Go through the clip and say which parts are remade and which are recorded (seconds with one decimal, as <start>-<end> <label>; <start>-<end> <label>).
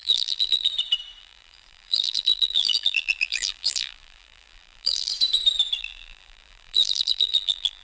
0.0-0.7 remade; 0.7-1.2 recorded; 1.2-5.1 remade; 5.1-5.8 recorded; 5.8-7.8 remade